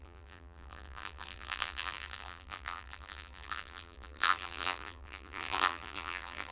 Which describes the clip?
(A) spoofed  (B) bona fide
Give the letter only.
A